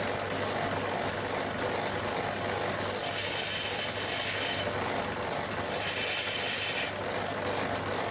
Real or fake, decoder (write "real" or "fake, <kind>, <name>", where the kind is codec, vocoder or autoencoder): real